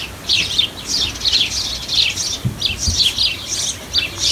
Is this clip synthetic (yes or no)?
no